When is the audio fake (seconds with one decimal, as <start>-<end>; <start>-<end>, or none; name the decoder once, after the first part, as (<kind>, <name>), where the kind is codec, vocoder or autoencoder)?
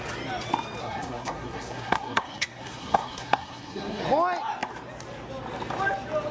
0.8-4.0 (codec, SNAC)